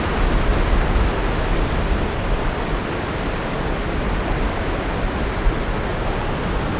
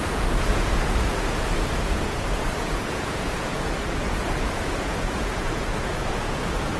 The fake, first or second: second